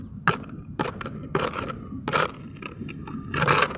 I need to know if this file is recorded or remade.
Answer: recorded